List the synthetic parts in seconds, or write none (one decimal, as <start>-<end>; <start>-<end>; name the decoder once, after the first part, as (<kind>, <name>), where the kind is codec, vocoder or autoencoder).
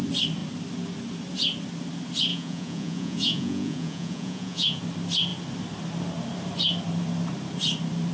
2.3-4.8 (vocoder, Vocos)